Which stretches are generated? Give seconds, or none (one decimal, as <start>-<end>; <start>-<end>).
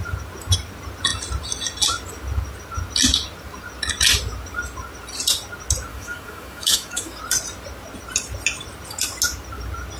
5.9-7.2